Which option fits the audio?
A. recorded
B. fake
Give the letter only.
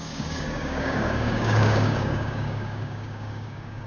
B